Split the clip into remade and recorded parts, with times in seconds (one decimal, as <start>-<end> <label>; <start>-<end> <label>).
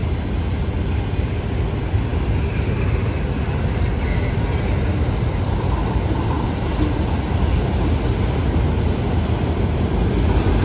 0.0-10.6 recorded